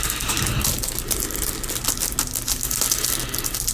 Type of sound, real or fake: real